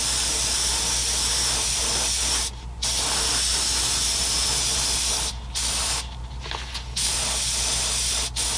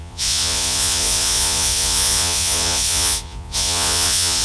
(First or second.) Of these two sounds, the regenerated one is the second